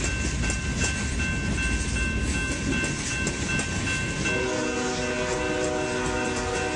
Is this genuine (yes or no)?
yes